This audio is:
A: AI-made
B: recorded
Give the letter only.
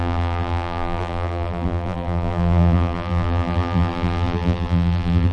A